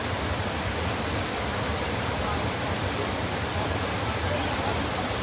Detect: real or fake fake